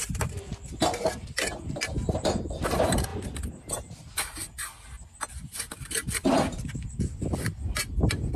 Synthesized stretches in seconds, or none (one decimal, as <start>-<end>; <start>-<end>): none